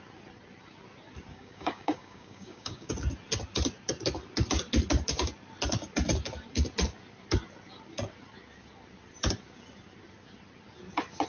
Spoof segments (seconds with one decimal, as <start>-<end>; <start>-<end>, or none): 1.3-2.9

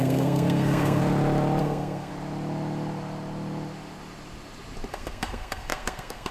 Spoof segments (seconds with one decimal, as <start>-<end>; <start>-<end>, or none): 0.0-1.0; 1.6-2.1; 4.9-6.3

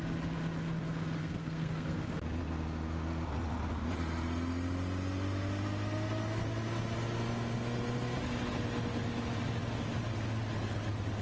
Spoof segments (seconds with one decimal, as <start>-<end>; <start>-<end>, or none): 1.2-2.0